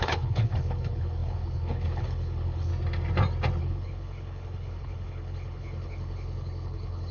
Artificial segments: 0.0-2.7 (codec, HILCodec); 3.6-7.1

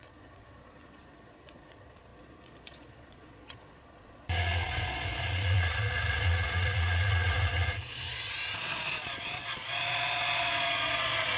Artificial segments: 0.0-11.4 (vocoder, Vocos)

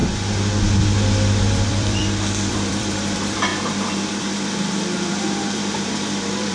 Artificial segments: 1.4-2.0 (vocoder, BigVGAN v2); 2.5-6.5

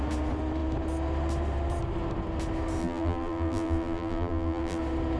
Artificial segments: 2.8-4.8 (vocoder, BigVGAN v2)

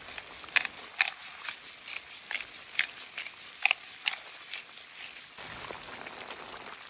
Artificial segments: none